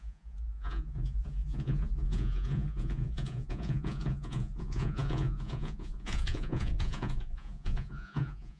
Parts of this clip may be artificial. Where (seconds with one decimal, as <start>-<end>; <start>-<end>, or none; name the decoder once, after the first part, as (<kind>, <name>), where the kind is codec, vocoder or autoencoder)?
0.0-8.6 (vocoder, Vocos)